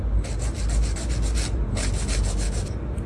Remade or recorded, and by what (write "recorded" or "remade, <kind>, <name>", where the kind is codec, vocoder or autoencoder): recorded